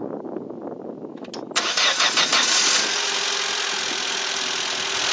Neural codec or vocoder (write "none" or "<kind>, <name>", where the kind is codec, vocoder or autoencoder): none